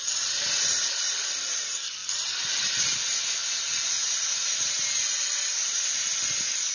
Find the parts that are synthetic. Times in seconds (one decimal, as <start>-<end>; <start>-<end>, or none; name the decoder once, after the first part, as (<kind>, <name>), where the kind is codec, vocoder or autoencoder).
none